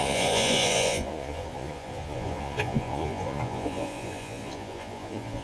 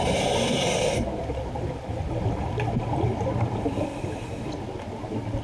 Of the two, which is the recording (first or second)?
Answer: second